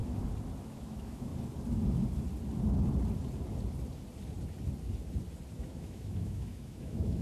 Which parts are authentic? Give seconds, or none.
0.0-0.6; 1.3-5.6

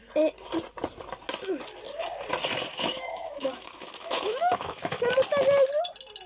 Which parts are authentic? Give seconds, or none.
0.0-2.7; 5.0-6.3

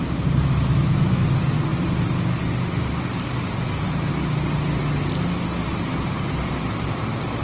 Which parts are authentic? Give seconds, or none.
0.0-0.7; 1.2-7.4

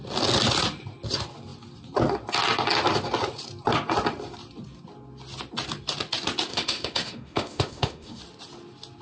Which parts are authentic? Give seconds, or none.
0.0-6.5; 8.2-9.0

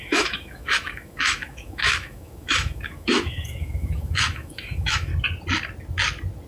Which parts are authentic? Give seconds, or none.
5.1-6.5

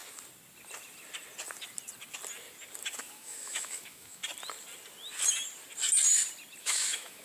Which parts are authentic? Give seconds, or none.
0.0-3.0; 4.2-6.6

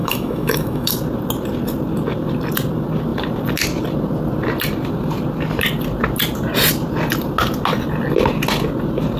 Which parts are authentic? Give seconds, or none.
0.9-9.2

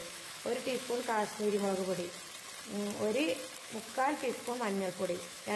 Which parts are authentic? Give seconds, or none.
1.3-3.6